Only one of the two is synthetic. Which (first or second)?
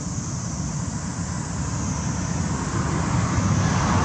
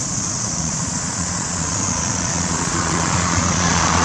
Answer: second